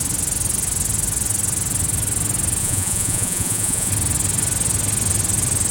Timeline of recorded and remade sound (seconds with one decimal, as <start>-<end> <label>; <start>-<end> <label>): 0.0-2.6 recorded; 2.6-3.9 remade; 3.9-5.7 recorded

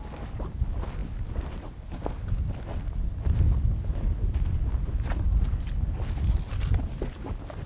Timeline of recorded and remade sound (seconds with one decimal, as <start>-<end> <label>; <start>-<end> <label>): 0.0-7.7 recorded

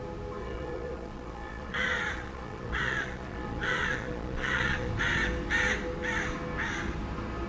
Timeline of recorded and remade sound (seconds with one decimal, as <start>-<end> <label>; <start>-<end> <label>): 0.0-0.4 recorded; 0.4-4.9 remade; 4.9-7.5 recorded

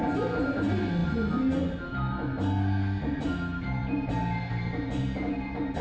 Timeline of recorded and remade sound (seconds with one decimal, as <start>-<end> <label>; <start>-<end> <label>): 0.0-5.8 recorded

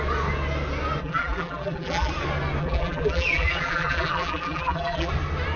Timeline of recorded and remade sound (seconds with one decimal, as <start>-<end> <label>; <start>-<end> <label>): 0.0-1.0 recorded; 1.0-2.1 remade; 2.1-2.6 recorded; 2.6-5.1 remade; 5.1-5.6 recorded

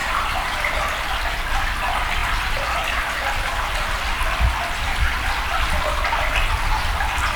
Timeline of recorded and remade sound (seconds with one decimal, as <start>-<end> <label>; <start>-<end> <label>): 0.0-0.7 remade; 0.7-7.4 recorded

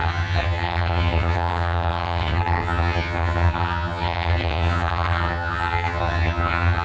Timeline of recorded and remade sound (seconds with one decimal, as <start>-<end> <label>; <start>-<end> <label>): 0.0-6.8 remade

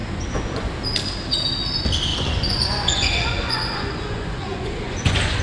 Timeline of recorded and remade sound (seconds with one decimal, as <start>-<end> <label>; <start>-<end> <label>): 0.0-0.7 remade; 0.7-2.1 recorded; 2.1-5.4 remade